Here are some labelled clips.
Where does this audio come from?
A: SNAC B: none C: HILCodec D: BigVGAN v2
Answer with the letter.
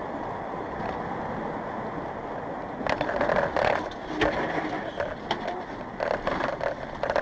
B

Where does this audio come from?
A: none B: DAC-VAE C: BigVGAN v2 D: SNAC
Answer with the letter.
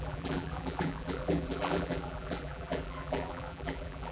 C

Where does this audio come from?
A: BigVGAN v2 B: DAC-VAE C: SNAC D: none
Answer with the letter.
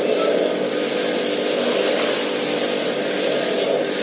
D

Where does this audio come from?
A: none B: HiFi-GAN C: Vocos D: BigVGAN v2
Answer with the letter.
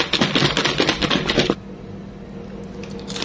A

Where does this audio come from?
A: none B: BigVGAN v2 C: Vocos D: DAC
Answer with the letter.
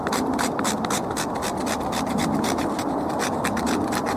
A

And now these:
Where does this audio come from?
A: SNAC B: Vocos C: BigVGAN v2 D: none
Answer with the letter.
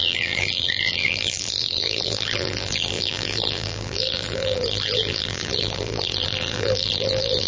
C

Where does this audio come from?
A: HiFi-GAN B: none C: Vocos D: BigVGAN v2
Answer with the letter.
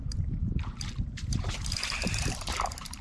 D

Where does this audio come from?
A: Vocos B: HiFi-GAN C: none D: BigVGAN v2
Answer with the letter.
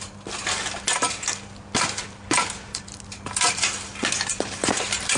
C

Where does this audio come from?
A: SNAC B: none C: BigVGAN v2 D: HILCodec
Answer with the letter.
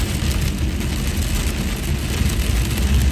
B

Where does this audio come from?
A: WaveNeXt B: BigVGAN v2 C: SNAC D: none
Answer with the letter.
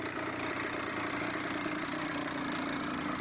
B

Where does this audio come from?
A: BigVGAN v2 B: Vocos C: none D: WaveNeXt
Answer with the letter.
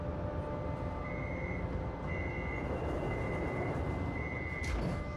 C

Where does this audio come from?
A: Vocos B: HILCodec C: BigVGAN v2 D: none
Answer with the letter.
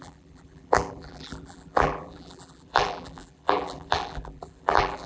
C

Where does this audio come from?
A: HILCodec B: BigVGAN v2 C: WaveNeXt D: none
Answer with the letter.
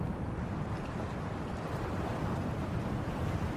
B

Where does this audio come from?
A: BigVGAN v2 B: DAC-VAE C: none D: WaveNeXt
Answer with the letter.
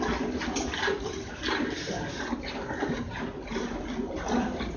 C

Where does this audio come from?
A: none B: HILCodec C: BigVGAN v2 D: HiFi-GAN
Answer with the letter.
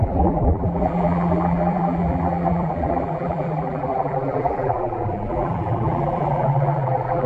C